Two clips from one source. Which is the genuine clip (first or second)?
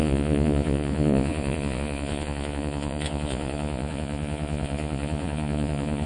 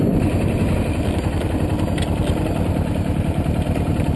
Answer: second